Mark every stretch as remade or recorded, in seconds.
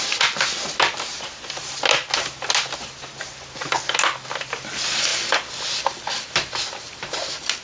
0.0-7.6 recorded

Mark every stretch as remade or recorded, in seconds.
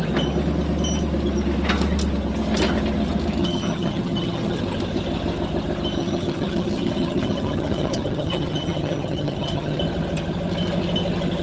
0.0-3.4 recorded; 3.4-4.6 remade; 4.6-6.0 recorded; 6.0-9.8 remade; 9.8-11.4 recorded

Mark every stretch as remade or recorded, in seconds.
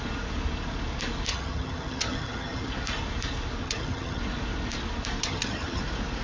0.0-1.3 recorded; 1.3-2.7 remade; 2.7-3.6 recorded; 3.6-4.2 remade; 4.2-5.2 recorded; 5.2-5.8 remade; 5.8-6.2 recorded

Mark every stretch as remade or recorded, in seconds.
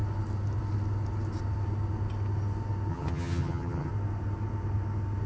0.0-2.9 recorded; 2.9-3.9 remade; 3.9-5.3 recorded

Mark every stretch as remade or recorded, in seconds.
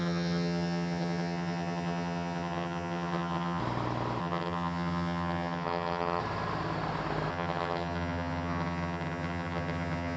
0.0-3.6 remade; 3.6-4.2 recorded; 4.2-6.2 remade; 6.2-7.3 recorded; 7.3-10.2 remade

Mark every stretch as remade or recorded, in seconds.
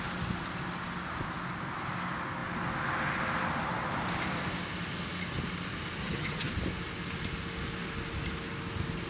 0.0-6.0 recorded; 6.0-6.5 remade; 6.5-9.1 recorded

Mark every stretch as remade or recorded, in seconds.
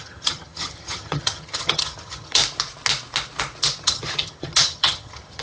0.0-2.4 remade; 2.4-3.8 recorded; 3.8-5.4 remade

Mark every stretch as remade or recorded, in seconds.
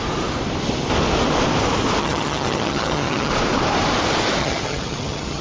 0.0-2.0 recorded; 2.0-3.3 remade; 3.3-4.4 recorded; 4.4-5.4 remade